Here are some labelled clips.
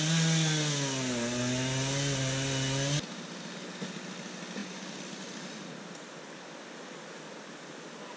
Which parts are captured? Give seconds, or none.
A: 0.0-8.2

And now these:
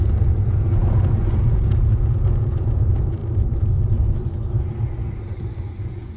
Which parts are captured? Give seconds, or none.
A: 3.2-5.8

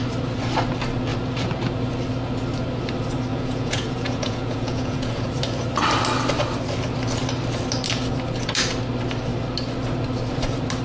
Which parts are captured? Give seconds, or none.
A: 0.0-3.3; 5.3-10.8

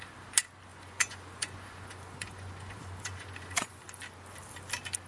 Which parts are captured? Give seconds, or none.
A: 0.0-0.7; 3.8-5.1

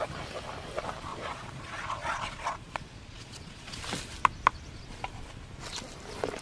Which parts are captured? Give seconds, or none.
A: 0.0-1.1; 3.8-6.4

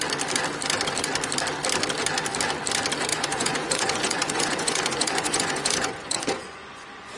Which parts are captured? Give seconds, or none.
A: 0.0-3.1

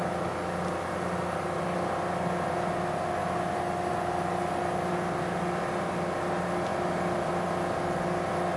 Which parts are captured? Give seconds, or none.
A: 0.0-8.6

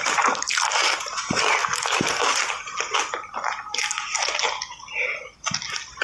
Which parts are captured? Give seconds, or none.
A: 0.0-6.0